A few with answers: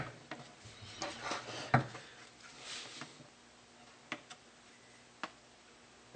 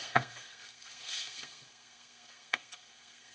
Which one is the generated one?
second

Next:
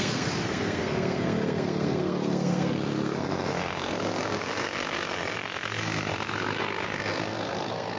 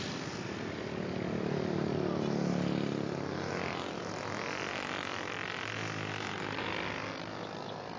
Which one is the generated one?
first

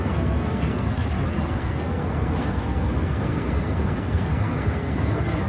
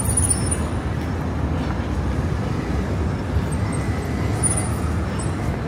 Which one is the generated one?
first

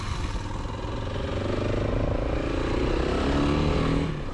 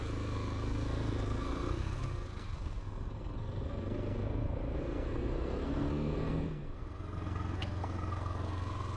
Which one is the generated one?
second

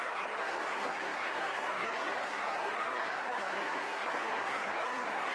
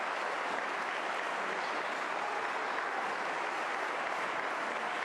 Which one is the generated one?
first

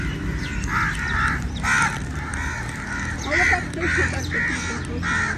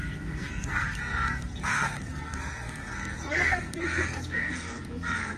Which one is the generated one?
second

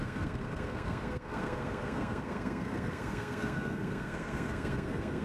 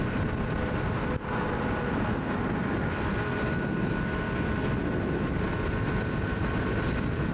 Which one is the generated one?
first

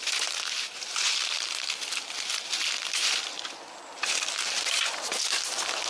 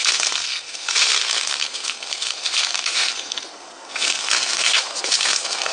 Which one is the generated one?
second